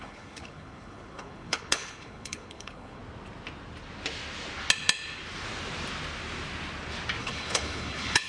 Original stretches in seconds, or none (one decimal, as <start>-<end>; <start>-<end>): 3.0-7.2